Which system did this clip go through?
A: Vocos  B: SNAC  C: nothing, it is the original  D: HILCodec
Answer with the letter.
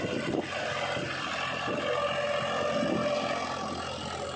C